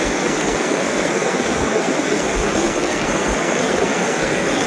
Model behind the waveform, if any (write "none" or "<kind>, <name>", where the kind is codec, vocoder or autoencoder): codec, SNAC